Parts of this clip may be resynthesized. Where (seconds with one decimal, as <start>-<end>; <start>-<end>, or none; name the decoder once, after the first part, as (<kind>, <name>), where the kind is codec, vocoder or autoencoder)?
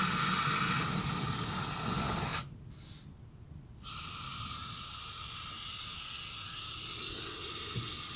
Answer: none